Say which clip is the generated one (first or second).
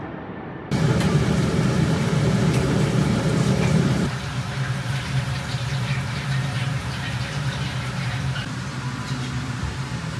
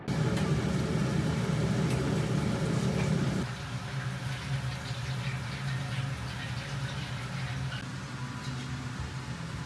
first